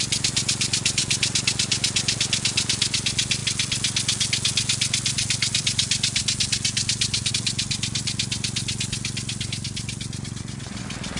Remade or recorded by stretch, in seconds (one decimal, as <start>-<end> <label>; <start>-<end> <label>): 0.0-11.2 recorded